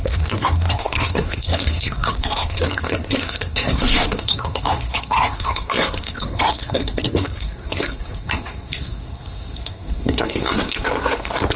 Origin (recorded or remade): remade